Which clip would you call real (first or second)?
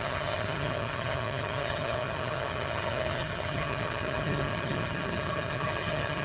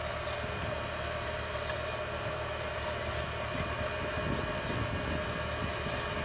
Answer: second